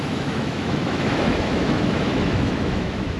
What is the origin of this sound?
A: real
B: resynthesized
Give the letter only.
B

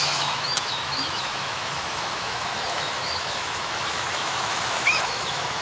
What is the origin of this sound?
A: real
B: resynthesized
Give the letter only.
B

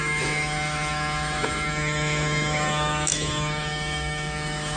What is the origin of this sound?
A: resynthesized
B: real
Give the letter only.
A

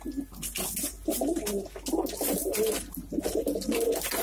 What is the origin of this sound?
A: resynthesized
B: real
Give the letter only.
B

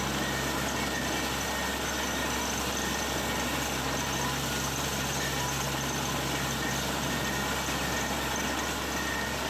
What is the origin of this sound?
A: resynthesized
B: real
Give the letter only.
B